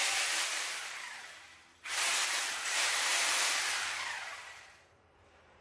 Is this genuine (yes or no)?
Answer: no